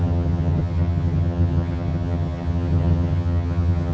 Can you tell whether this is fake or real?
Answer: fake